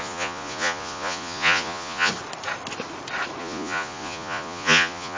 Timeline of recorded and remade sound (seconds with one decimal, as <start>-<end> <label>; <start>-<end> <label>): 0.0-2.1 remade; 2.1-3.4 recorded; 3.4-5.2 remade